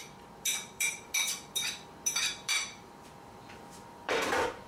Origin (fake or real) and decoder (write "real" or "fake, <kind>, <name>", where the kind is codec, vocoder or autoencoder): fake, vocoder, BigVGAN v2